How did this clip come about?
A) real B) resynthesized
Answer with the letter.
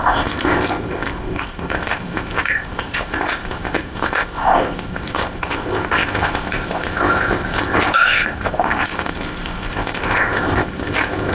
B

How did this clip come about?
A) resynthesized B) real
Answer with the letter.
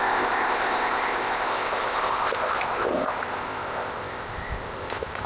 A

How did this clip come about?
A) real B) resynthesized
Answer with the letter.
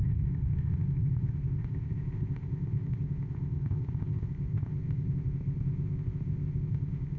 B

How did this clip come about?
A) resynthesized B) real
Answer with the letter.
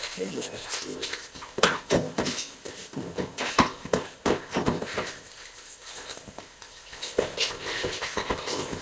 A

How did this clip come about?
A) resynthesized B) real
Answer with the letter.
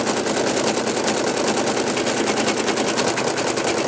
B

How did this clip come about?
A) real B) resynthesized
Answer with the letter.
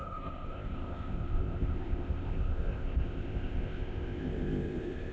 B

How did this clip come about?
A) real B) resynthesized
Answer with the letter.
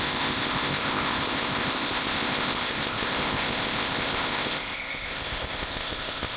B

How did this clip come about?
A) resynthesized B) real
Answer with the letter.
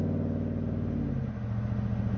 B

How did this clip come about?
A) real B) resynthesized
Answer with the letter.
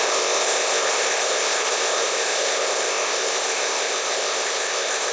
B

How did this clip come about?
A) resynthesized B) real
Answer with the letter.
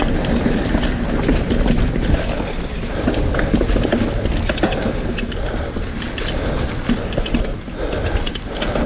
B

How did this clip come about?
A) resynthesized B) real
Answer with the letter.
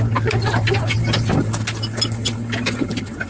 B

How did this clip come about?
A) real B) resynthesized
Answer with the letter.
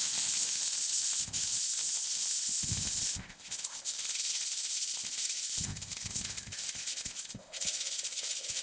B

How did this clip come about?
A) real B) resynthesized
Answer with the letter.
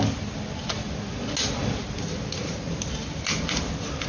A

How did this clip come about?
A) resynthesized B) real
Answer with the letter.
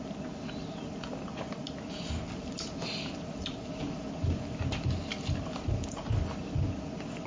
B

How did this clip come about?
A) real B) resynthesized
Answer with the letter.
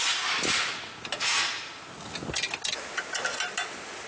A